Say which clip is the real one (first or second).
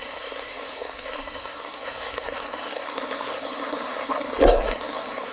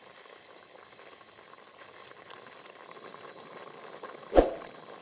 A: second